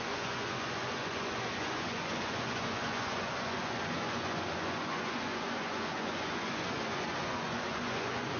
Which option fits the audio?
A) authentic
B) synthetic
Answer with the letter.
B